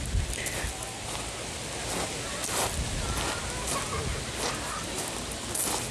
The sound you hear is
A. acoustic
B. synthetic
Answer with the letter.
A